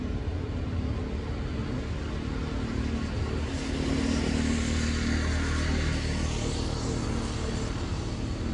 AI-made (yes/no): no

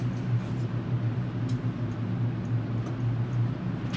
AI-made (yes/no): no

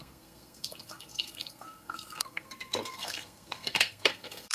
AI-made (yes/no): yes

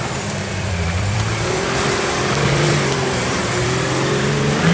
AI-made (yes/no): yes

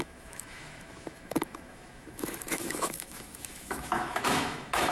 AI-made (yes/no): yes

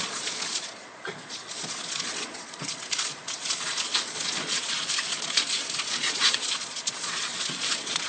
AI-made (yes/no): yes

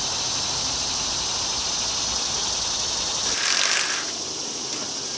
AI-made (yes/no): no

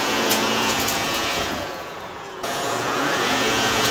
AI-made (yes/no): yes